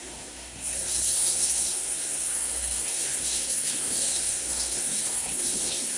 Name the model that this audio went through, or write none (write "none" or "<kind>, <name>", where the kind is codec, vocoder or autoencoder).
codec, SNAC